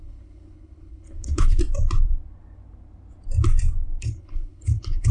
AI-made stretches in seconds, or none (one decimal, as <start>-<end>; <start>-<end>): 0.0-1.6; 4.0-5.1